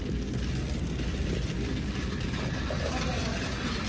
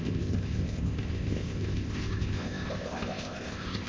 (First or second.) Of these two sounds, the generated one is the second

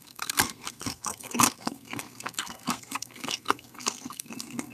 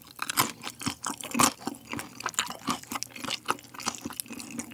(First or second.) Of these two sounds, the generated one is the first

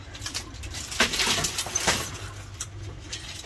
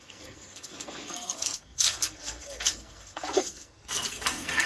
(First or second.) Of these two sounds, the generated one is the second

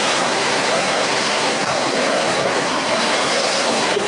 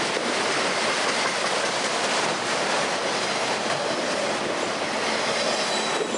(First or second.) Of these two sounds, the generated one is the first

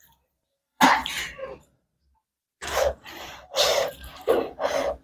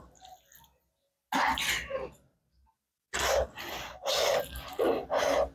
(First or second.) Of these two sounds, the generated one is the first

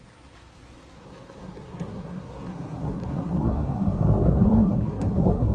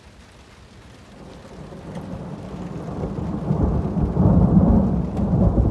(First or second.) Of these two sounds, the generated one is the first